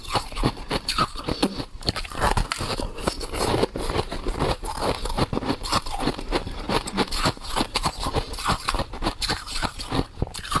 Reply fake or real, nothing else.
fake